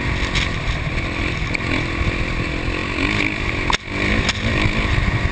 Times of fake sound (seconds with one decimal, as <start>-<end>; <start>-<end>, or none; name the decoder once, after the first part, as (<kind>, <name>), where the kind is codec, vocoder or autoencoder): none